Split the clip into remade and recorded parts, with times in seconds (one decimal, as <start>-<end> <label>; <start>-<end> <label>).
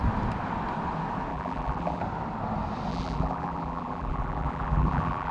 0.0-1.3 recorded; 1.3-2.0 remade; 2.0-2.9 recorded; 2.9-5.3 remade